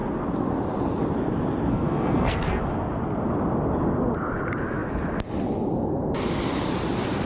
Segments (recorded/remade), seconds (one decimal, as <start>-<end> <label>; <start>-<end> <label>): 0.0-1.7 recorded; 1.7-2.6 remade; 2.6-7.3 recorded